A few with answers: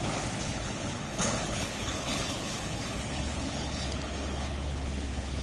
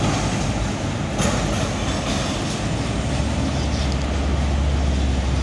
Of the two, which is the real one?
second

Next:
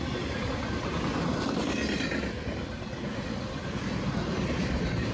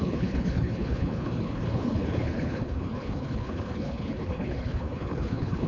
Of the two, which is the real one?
first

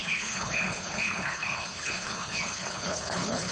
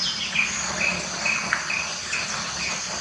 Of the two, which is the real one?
second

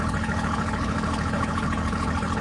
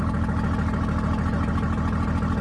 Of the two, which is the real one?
second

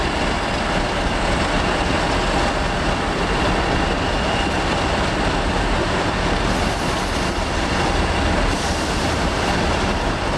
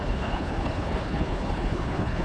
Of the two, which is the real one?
first